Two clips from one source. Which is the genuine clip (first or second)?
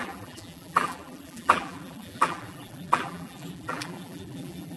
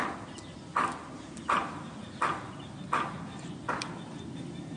second